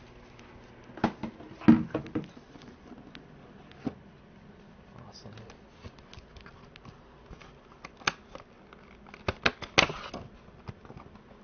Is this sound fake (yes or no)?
no